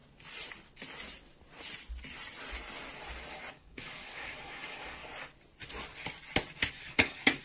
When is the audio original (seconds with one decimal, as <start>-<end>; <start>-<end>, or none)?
0.0-3.5; 5.0-6.7

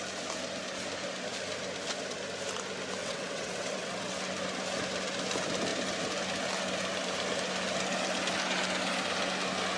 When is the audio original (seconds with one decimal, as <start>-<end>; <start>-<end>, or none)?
0.0-3.0; 4.2-9.8

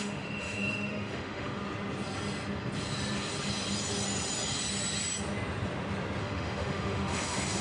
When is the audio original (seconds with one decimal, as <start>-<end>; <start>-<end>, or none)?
1.6-6.2

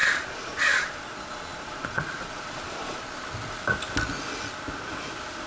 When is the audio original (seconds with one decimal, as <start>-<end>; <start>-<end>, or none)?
3.2-5.5

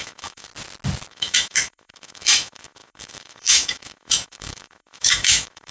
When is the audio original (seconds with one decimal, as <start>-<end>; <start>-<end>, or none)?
0.5-1.1

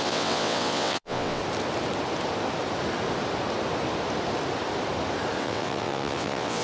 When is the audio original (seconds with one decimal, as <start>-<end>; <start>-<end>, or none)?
1.4-5.4